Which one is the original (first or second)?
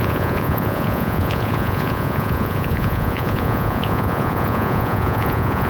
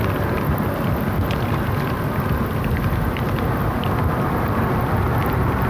second